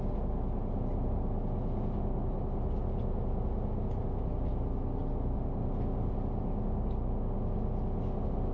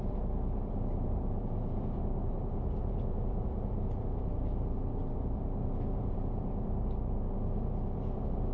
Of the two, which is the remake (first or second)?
second